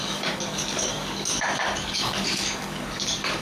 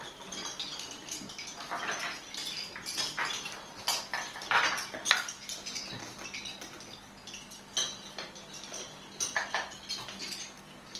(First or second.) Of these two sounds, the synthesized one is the first